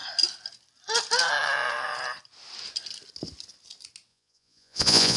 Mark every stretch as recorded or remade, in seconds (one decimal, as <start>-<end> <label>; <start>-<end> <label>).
0.0-4.1 recorded; 4.1-5.2 remade